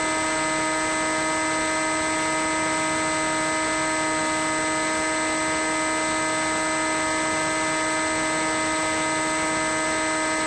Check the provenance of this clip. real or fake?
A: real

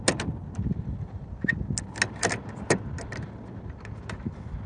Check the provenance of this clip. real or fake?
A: real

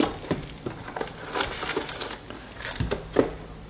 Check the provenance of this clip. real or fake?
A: real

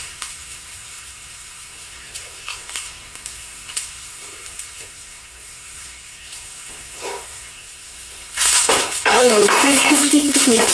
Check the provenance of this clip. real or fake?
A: fake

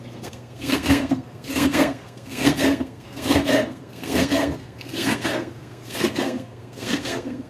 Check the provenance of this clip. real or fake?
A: fake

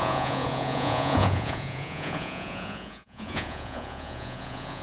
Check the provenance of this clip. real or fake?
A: fake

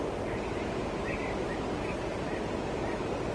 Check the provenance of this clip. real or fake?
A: real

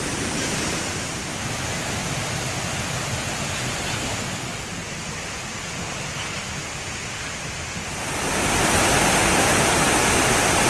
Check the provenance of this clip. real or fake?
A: real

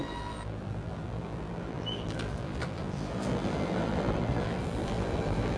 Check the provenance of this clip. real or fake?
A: fake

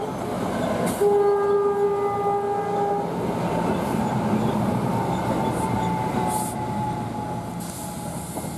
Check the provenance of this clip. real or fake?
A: real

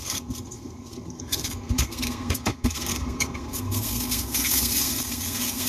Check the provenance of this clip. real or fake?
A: fake